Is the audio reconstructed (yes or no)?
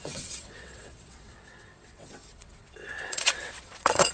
yes